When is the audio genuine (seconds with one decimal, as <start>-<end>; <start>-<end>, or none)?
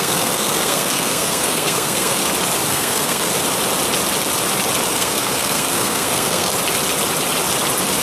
2.2-2.7; 3.3-4.9; 6.5-8.0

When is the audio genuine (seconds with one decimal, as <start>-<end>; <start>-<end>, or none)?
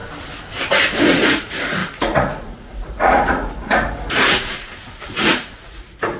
0.0-1.0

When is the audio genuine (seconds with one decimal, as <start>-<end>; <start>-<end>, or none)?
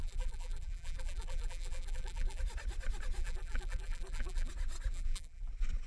2.4-3.2; 4.5-4.9; 5.5-5.9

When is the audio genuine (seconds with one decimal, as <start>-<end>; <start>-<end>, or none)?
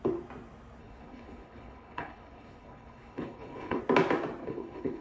0.0-0.8; 3.8-4.4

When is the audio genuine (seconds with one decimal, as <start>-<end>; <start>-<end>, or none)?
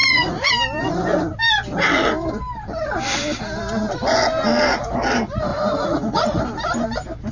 0.5-5.5; 6.4-7.3